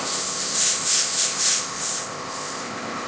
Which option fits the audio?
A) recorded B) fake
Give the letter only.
B